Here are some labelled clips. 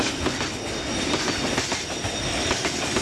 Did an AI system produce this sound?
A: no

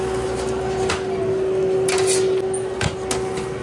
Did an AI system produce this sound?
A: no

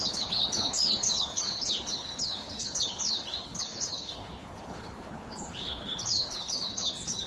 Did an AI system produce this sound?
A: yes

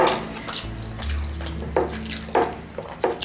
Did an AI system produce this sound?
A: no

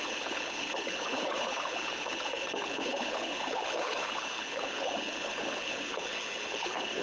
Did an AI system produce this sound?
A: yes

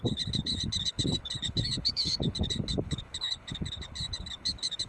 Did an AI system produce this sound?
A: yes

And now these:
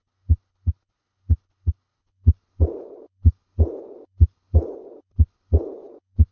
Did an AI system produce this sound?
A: yes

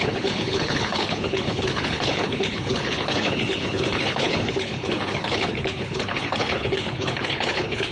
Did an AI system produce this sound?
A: yes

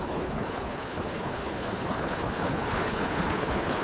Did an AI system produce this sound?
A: yes